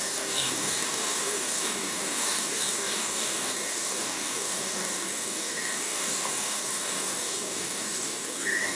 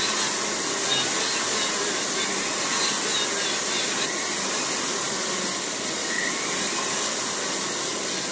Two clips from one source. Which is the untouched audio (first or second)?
second